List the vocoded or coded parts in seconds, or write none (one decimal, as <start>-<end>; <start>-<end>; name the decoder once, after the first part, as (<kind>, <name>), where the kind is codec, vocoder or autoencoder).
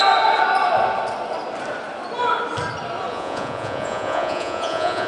3.1-5.1 (vocoder, Vocos)